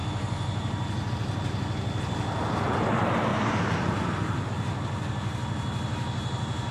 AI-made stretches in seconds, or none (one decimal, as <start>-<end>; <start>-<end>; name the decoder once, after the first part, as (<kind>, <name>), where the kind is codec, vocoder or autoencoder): 3.3-4.5 (vocoder, BigVGAN v2)